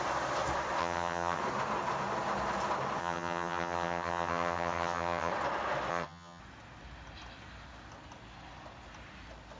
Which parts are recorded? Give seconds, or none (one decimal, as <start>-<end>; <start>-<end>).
0.0-0.8; 1.4-3.0; 5.3-5.9; 6.4-9.6